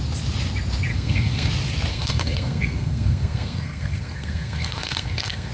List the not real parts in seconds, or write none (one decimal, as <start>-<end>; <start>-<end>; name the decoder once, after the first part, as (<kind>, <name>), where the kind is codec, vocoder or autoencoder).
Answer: 0.9-1.5 (codec, SNAC); 1.9-5.5